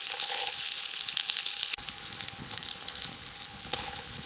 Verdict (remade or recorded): remade